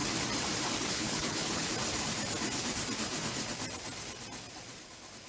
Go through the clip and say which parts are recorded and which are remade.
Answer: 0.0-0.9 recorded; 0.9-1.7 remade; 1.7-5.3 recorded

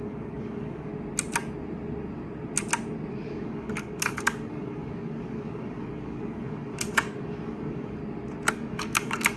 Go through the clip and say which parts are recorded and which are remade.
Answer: 0.0-0.9 remade; 0.9-3.1 recorded; 3.1-8.0 remade; 8.0-8.5 recorded; 8.5-9.4 remade

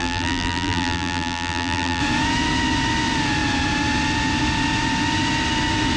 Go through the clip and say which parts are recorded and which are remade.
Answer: 0.0-2.0 remade; 2.0-6.0 recorded

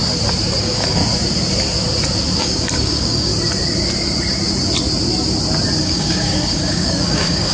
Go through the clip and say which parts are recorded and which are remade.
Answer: 0.0-0.6 recorded; 0.6-1.0 remade; 1.0-2.4 recorded; 2.4-3.3 remade; 3.3-5.8 recorded; 5.8-7.5 remade

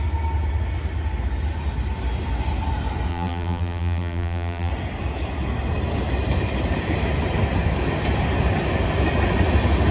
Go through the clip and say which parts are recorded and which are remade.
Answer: 0.0-3.1 recorded; 3.1-4.7 remade; 4.7-9.9 recorded

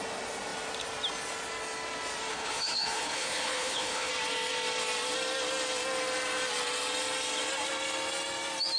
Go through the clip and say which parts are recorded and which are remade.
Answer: 0.0-2.3 recorded; 2.3-4.1 remade; 4.1-8.8 recorded

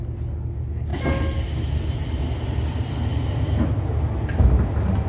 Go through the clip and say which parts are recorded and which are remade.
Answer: 0.0-5.1 recorded